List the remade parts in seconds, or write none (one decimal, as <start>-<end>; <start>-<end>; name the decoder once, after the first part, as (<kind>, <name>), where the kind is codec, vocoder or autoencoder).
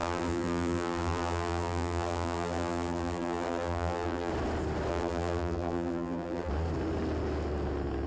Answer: 0.0-4.3 (vocoder, BigVGAN v2); 4.9-6.5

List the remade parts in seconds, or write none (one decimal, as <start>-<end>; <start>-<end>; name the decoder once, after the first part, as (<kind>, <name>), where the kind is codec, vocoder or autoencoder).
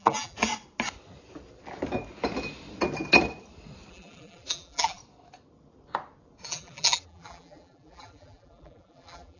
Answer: 0.0-0.5 (vocoder, BigVGAN v2); 3.9-5.0; 6.4-9.4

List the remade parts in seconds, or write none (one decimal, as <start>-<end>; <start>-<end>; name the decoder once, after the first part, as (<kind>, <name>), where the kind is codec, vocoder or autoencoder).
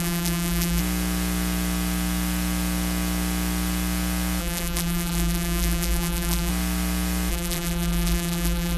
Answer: 0.0-0.8 (vocoder, BigVGAN v2); 4.4-6.5; 7.3-8.8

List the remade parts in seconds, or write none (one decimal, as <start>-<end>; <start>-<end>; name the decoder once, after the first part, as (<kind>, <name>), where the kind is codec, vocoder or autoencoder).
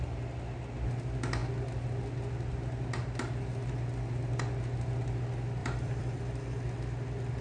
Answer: 5.6-6.2 (vocoder, BigVGAN v2)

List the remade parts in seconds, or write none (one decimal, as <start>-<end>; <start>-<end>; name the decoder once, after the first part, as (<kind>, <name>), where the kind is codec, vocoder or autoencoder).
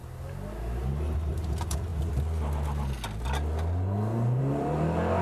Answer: 0.9-1.9 (vocoder, BigVGAN v2); 4.4-5.2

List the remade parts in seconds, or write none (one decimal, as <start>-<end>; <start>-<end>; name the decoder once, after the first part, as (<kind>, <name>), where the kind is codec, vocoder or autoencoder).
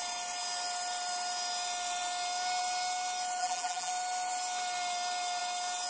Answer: 3.4-3.9 (vocoder, BigVGAN v2)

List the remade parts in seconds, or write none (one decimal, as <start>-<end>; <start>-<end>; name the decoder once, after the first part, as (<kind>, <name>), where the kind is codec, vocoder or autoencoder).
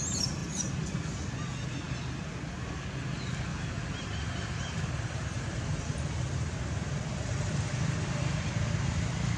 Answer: 3.5-8.3 (vocoder, BigVGAN v2)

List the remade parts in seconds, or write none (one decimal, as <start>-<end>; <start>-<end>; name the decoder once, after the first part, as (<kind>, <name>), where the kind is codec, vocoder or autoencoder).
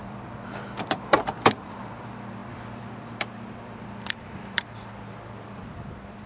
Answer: 0.0-6.3 (vocoder, BigVGAN v2)